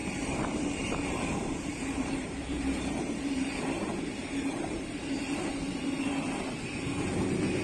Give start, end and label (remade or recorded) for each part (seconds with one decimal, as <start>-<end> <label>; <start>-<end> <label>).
0.0-3.6 remade; 3.6-4.2 recorded; 4.2-5.5 remade; 5.5-7.6 recorded